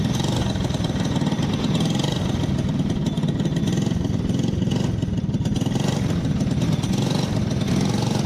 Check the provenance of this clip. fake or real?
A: real